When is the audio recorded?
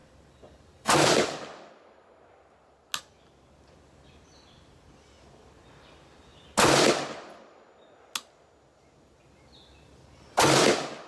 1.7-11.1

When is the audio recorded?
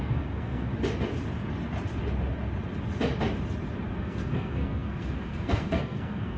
0.7-4.0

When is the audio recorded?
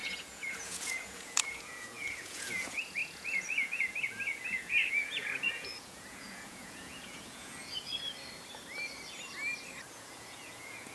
7.9-9.9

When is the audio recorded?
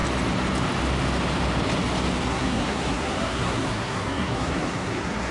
0.0-2.3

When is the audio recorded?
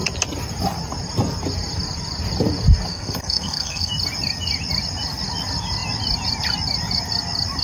0.0-2.9; 3.9-7.6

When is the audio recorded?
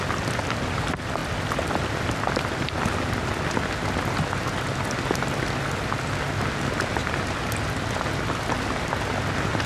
0.0-9.7